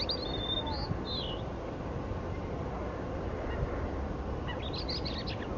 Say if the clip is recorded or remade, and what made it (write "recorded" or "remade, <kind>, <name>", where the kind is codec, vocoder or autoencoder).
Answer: recorded